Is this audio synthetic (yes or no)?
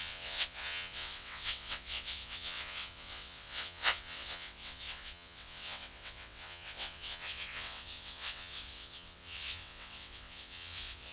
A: yes